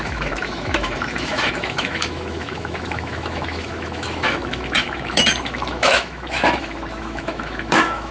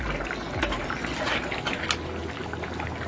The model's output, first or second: first